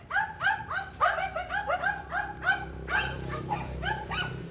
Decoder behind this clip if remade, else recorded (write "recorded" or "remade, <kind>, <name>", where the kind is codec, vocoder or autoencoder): remade, vocoder, BigVGAN v2